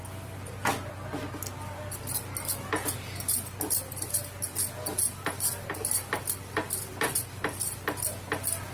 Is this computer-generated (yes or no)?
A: no